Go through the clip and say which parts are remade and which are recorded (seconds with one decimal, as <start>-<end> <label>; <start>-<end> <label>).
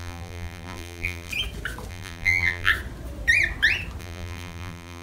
0.0-1.3 remade; 1.3-1.9 recorded; 1.9-2.7 remade; 2.7-4.0 recorded; 4.0-5.0 remade